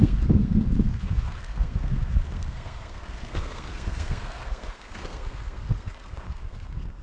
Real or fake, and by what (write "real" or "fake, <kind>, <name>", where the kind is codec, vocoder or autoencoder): fake, codec, SNAC